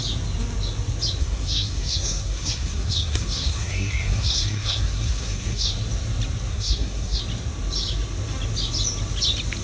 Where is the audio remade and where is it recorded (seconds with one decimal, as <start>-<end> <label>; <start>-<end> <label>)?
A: 0.0-1.2 recorded; 1.2-5.7 remade; 5.7-6.5 recorded; 6.5-7.2 remade; 7.2-9.6 recorded